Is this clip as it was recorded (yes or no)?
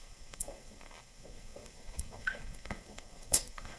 no